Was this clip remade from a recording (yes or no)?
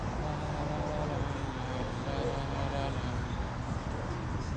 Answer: no